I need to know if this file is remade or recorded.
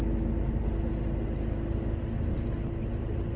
recorded